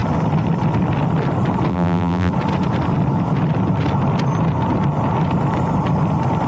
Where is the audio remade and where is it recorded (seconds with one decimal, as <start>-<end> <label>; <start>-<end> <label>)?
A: 0.0-1.7 recorded; 1.7-2.3 remade; 2.3-6.5 recorded